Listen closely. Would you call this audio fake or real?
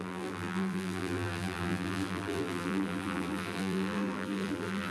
fake